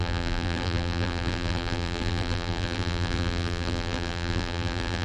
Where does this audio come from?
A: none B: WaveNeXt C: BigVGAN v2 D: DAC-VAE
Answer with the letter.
C